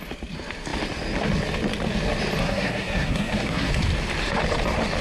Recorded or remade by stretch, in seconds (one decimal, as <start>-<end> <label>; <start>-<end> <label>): 0.0-2.4 recorded; 2.4-3.7 remade; 3.7-5.0 recorded